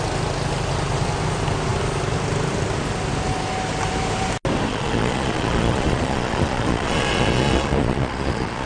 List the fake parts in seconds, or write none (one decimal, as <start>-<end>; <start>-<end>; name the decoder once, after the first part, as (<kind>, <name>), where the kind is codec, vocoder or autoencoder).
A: 4.7-8.7 (vocoder, Vocos)